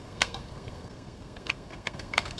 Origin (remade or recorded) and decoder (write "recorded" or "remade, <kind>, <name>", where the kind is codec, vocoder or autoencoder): remade, codec, SNAC